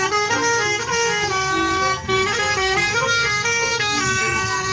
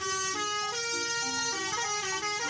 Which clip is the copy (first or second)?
first